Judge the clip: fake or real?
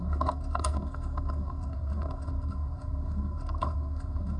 fake